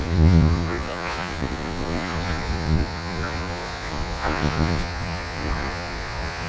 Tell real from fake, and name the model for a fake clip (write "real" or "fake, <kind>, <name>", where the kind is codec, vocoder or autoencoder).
fake, vocoder, Vocos